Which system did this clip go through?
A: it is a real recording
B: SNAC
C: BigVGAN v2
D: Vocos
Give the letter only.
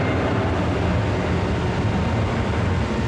A